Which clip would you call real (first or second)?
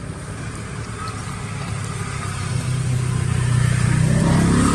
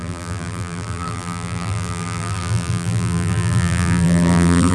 first